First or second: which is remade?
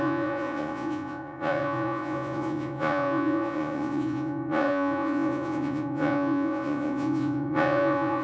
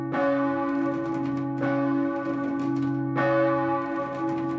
first